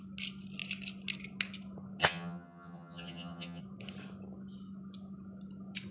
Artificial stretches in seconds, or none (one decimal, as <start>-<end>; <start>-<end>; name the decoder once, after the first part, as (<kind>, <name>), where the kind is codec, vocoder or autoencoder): 2.0-3.6 (vocoder, HiFi-GAN)